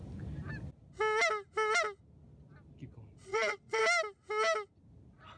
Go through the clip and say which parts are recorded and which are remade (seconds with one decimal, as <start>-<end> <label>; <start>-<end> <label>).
0.0-3.3 recorded; 3.3-3.8 remade; 3.8-5.4 recorded